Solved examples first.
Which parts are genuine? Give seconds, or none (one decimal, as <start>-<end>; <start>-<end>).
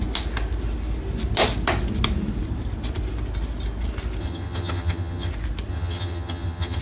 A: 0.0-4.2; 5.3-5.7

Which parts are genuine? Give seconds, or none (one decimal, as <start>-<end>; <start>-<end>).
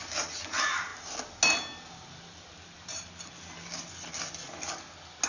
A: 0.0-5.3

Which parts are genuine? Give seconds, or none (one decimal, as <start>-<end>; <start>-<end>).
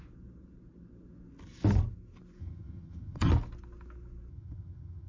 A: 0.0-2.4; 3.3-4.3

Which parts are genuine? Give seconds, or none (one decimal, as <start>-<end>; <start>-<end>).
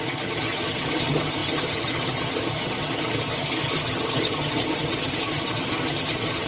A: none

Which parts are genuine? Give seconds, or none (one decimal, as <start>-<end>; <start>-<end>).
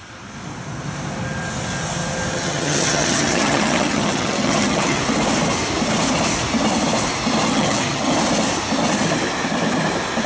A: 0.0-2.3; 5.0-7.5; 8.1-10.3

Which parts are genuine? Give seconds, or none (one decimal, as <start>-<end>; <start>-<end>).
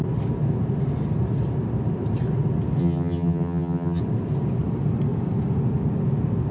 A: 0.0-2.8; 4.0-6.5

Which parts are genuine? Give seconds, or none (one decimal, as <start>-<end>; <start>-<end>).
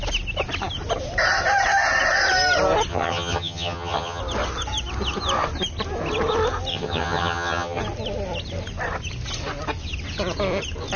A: 0.0-2.9; 4.2-6.7; 7.8-11.0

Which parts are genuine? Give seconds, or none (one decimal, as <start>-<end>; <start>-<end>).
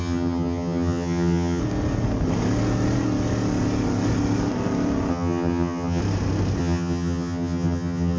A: 1.6-5.1; 6.0-6.6